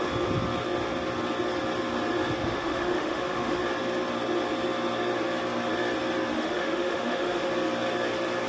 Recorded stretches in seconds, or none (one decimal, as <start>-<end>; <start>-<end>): 0.0-2.4; 3.6-6.3; 7.5-8.5